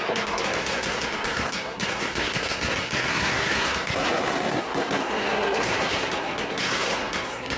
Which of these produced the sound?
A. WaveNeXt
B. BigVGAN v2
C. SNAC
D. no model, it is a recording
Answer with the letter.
C